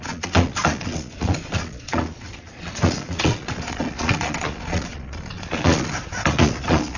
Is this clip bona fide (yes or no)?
no